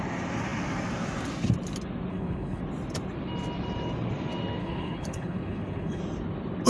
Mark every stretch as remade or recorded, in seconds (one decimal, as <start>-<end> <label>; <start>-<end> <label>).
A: 0.0-2.1 recorded; 2.1-2.6 remade; 2.6-4.6 recorded; 4.6-6.0 remade; 6.0-6.7 recorded